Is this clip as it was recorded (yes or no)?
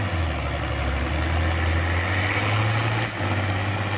yes